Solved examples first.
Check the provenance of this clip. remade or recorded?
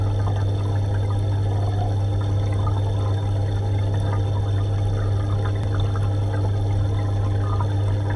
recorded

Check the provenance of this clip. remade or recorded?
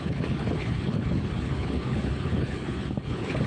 remade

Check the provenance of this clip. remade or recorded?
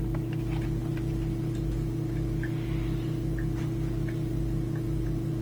recorded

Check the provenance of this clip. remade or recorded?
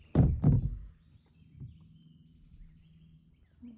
recorded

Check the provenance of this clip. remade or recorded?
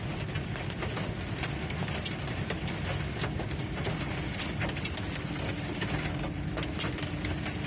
recorded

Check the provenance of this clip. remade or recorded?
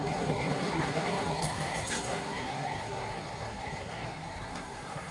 remade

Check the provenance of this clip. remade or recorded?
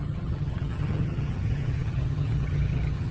remade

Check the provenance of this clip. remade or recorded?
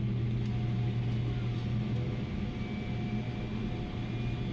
recorded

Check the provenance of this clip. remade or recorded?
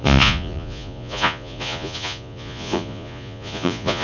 remade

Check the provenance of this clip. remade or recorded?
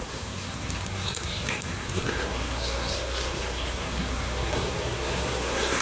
remade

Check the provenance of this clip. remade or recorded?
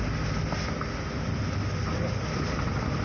recorded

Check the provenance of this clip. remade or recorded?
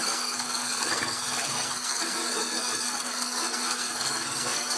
remade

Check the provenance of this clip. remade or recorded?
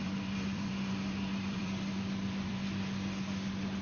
remade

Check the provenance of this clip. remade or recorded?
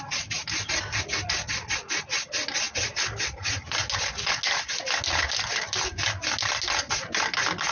recorded